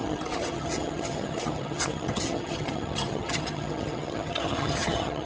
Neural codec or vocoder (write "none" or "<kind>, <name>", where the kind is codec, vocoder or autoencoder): vocoder, HiFi-GAN